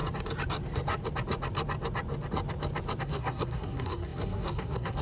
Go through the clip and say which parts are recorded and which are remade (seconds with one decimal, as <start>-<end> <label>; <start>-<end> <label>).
0.0-3.0 recorded; 3.0-5.0 remade